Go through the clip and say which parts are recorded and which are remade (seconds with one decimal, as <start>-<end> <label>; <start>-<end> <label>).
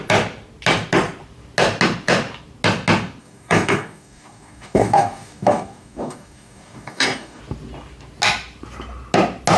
0.0-3.2 recorded; 3.2-7.4 remade; 7.4-9.6 recorded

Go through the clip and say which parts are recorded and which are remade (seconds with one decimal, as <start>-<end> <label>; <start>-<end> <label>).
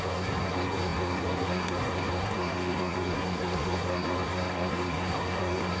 0.0-5.8 remade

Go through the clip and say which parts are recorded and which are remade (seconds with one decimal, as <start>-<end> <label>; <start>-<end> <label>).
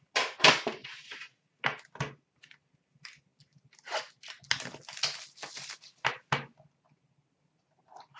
0.0-0.8 recorded; 0.8-1.6 remade; 1.6-8.2 recorded